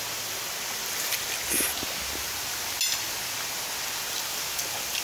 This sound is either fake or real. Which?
real